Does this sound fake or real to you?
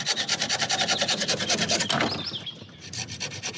real